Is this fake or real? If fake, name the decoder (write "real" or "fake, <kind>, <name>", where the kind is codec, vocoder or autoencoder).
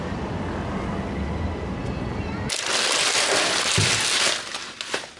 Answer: real